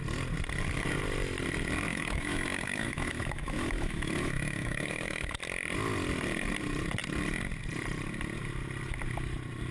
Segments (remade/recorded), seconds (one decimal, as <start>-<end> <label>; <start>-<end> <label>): 0.0-1.9 recorded; 1.9-5.4 remade; 5.4-9.7 recorded